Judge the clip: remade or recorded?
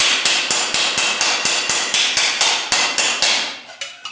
recorded